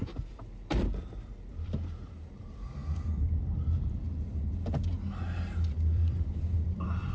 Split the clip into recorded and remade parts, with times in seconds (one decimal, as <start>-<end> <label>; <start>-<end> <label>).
0.0-0.9 remade; 0.9-1.5 recorded; 1.5-2.8 remade; 2.8-5.7 recorded; 5.7-7.1 remade